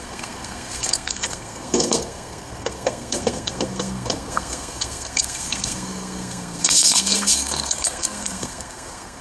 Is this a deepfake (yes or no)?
yes